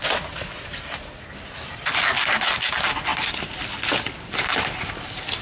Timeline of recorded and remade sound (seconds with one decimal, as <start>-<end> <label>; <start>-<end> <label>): 0.0-5.4 recorded